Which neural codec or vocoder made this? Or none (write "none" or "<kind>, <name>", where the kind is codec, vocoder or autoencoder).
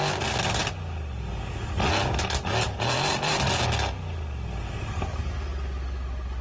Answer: none